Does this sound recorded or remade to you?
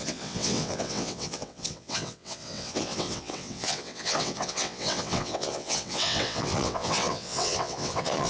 remade